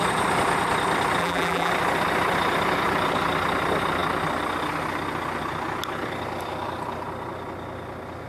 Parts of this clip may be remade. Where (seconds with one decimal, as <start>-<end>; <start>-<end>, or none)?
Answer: 1.2-1.7